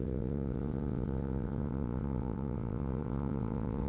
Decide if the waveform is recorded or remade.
remade